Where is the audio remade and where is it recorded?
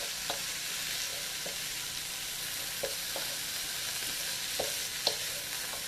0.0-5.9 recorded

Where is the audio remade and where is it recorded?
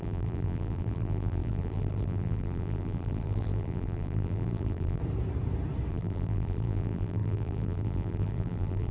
0.0-5.0 remade; 5.0-5.9 recorded; 5.9-8.9 remade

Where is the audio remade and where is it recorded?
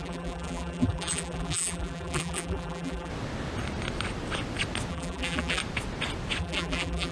0.0-3.1 remade; 3.1-4.9 recorded; 4.9-5.6 remade; 5.6-6.4 recorded; 6.4-7.1 remade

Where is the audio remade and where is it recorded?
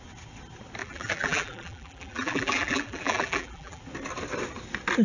0.0-0.8 recorded; 0.8-3.8 remade; 3.8-5.0 recorded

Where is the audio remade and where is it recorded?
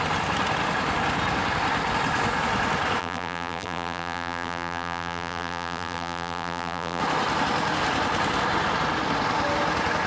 0.0-3.0 recorded; 3.0-7.0 remade; 7.0-10.1 recorded